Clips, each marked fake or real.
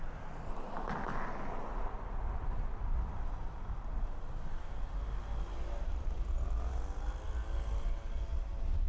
real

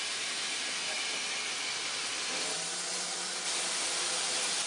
real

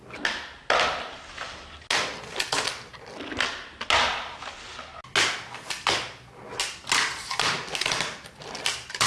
real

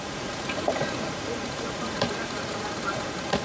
fake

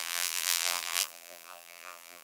fake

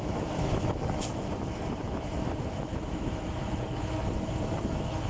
fake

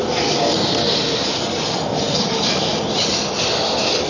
real